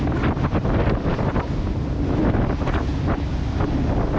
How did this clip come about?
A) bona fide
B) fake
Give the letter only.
A